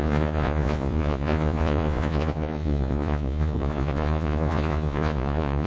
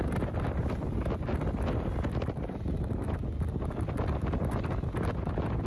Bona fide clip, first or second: second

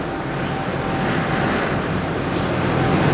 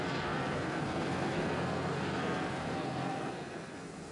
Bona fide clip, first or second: first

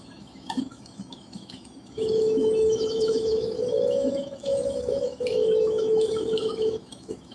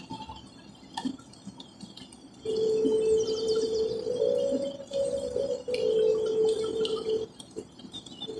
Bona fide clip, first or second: second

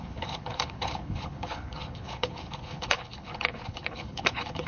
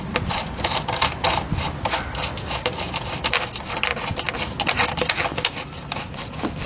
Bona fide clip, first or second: second